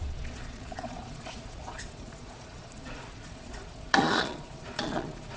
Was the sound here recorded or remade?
remade